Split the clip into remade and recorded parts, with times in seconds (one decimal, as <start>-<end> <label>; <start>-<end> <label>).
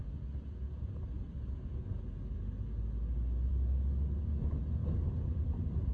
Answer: 0.0-5.9 recorded